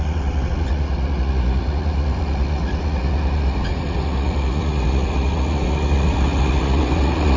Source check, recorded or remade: remade